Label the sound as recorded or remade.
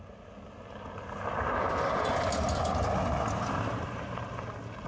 recorded